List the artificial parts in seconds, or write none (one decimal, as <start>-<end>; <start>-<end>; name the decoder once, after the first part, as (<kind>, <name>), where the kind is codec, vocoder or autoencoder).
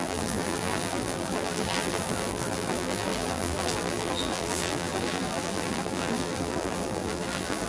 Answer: 0.0-7.7 (vocoder, BigVGAN v2)